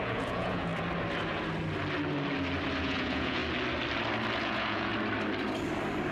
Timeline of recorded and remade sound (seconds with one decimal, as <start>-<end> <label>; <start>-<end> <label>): 0.0-0.7 remade; 0.7-2.8 recorded; 2.8-3.4 remade; 3.4-4.4 recorded; 4.4-4.9 remade; 4.9-6.1 recorded

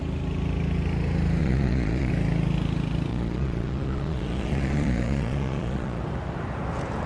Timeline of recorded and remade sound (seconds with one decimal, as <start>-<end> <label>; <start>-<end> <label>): 0.0-1.4 recorded; 1.4-2.1 remade; 2.1-3.1 recorded; 3.1-6.0 remade; 6.0-7.1 recorded

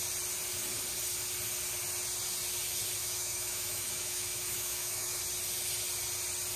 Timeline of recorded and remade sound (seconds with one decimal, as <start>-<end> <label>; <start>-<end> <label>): 0.0-3.0 recorded; 3.0-5.2 remade; 5.2-6.6 recorded

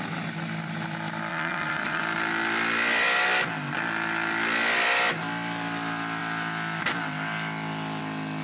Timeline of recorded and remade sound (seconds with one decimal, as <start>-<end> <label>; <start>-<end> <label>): 0.0-1.3 recorded; 1.3-2.0 remade; 2.0-8.4 recorded

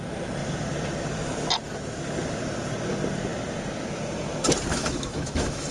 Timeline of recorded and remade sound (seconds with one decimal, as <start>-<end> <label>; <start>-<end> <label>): 0.0-4.7 recorded; 4.7-5.7 remade